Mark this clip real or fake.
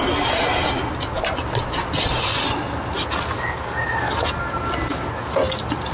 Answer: real